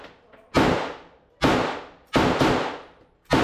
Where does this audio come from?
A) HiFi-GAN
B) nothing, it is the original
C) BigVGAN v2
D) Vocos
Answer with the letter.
B